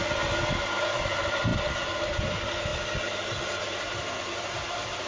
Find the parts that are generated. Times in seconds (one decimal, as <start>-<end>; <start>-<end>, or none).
none